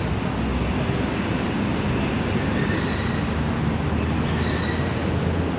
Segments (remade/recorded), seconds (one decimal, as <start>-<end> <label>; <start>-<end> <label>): 0.0-5.6 recorded